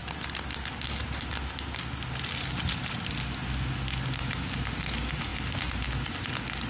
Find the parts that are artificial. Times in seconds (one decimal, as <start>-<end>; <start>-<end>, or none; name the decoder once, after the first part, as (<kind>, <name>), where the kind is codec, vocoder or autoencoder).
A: none